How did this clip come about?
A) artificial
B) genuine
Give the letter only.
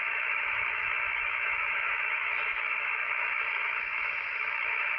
A